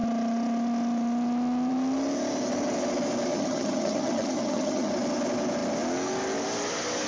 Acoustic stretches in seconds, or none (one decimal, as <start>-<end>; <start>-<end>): 0.0-3.3; 4.9-7.1